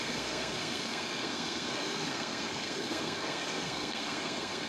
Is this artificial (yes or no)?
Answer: yes